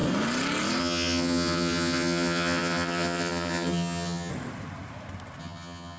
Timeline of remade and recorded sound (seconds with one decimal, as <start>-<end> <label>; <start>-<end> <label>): 0.0-0.8 recorded; 0.8-4.3 remade; 4.3-5.4 recorded; 5.4-6.0 remade